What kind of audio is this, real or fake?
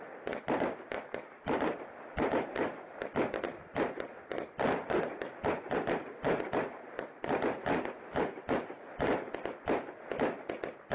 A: real